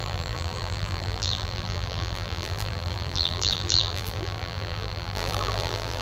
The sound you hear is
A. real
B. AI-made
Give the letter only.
B